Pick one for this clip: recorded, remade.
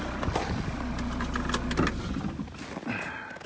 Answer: recorded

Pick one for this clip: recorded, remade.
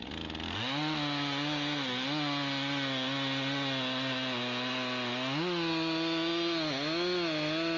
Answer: recorded